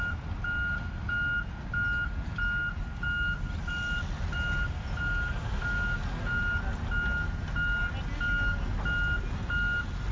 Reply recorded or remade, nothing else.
recorded